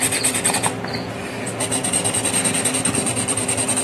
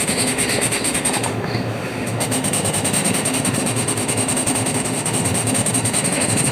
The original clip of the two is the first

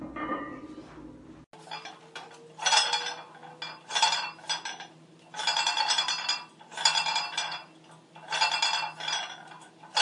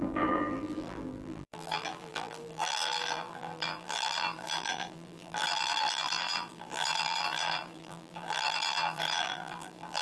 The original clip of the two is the first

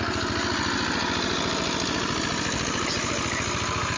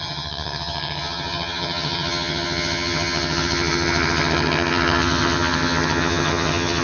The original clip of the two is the first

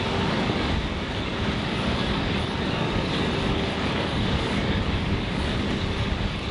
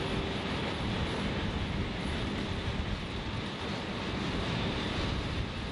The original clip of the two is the second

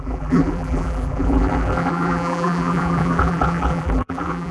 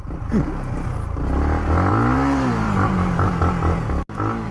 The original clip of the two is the second